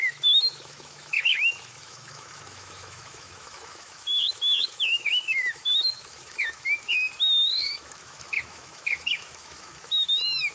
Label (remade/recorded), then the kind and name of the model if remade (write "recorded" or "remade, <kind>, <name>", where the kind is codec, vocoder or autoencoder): remade, autoencoder, DAC-VAE